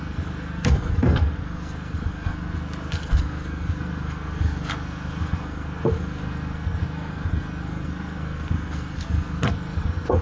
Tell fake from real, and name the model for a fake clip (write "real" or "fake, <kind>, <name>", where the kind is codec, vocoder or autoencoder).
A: fake, codec, SNAC